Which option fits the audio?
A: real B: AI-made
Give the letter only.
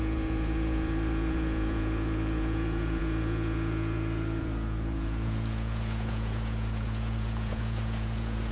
B